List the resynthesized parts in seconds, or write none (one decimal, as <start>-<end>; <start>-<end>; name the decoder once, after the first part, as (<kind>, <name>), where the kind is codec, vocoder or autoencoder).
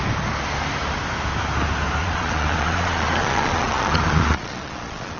2.0-5.2 (vocoder, Vocos)